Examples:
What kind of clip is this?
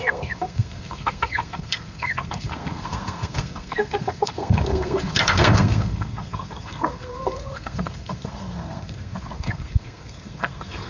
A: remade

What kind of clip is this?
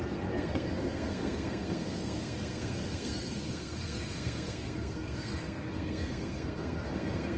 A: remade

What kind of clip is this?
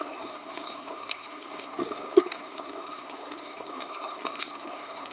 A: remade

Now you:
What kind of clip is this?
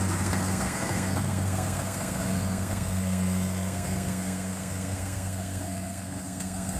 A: remade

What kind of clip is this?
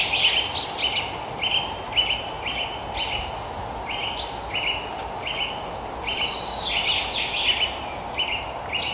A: recorded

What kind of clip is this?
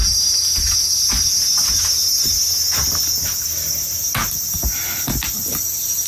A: recorded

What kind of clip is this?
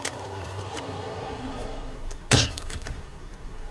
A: remade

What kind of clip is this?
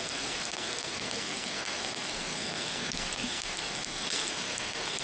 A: remade